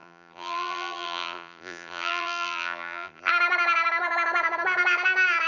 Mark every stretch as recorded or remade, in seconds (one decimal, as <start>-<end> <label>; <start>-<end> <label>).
0.0-3.3 remade; 3.3-5.5 recorded